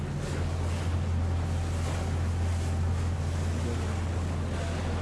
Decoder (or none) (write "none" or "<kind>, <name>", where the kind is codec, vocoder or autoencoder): none